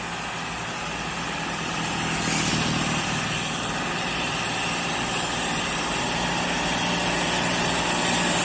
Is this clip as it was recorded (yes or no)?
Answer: yes